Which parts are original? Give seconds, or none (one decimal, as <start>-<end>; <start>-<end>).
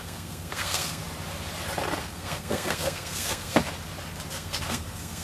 1.0-2.0; 3.6-4.3